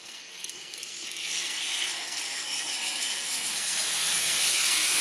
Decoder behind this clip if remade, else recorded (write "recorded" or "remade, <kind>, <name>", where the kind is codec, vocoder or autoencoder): remade, codec, SNAC